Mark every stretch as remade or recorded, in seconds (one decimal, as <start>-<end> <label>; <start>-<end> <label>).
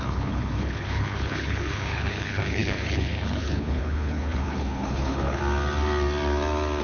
0.0-5.4 remade; 5.4-6.8 recorded